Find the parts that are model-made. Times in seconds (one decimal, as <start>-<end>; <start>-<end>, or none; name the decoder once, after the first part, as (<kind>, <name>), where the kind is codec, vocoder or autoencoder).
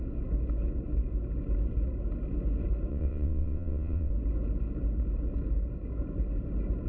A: 2.9-4.1 (vocoder, WaveNeXt)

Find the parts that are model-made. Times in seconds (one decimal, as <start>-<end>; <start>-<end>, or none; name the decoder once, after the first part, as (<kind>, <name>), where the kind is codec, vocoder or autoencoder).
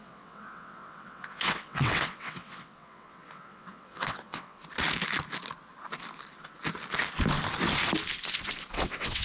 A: 0.0-4.6 (vocoder, WaveNeXt); 8.7-9.2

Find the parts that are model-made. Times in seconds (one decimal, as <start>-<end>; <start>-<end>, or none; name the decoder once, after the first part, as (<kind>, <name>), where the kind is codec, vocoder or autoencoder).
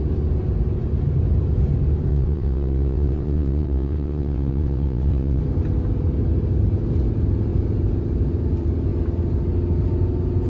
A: 2.1-5.4 (vocoder, WaveNeXt)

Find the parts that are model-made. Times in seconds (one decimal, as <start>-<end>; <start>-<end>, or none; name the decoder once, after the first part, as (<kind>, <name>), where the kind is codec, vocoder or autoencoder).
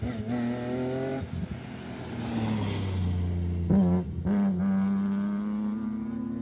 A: none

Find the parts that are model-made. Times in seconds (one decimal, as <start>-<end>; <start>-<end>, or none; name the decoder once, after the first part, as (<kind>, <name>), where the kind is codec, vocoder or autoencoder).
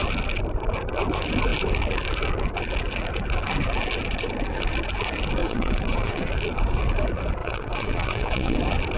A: 5.4-6.3 (vocoder, WaveNeXt); 7.4-8.6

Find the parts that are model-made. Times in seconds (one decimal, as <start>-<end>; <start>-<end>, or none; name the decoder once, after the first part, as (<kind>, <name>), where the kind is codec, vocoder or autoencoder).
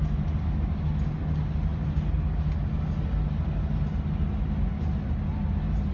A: none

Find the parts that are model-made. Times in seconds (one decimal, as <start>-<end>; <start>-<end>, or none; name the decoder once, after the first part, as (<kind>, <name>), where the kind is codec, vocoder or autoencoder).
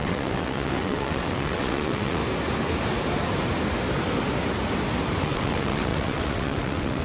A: 0.0-2.2 (vocoder, WaveNeXt); 5.2-7.0